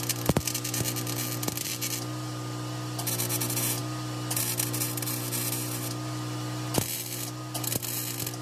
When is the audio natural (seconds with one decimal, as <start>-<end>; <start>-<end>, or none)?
0.0-8.4